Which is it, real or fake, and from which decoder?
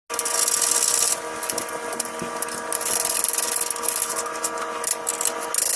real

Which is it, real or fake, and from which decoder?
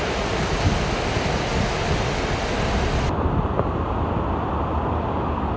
real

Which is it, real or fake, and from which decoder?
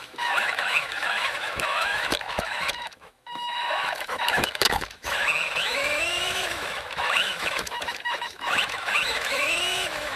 fake, autoencoder, DAC-VAE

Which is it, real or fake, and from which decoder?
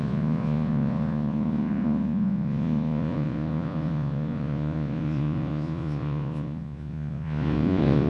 fake, vocoder, Vocos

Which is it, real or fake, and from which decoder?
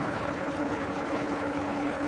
fake, codec, HILCodec